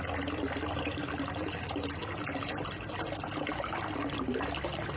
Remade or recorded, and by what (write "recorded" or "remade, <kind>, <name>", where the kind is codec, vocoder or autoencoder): recorded